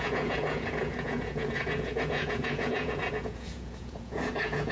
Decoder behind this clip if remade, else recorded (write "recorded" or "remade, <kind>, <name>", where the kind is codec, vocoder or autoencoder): remade, vocoder, Vocos